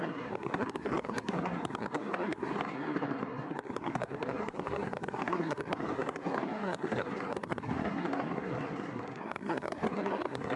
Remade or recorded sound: remade